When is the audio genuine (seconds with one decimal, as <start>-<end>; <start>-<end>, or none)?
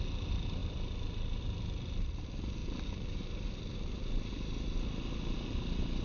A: 0.0-6.0